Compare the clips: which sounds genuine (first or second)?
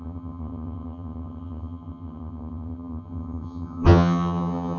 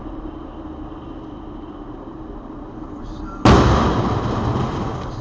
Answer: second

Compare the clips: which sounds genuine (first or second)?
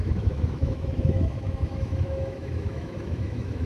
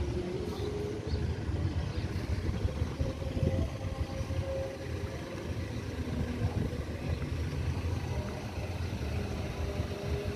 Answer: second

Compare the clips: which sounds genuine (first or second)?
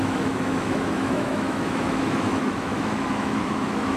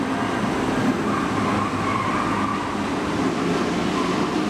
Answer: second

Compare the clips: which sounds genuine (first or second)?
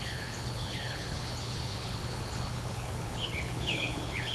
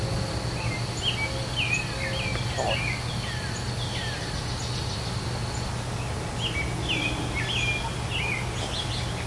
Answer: second